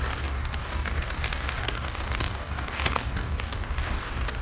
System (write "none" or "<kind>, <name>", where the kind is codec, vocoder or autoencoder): codec, DAC